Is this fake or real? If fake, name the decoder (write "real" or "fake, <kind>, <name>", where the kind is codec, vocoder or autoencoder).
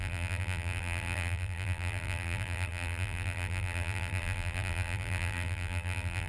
fake, vocoder, BigVGAN v2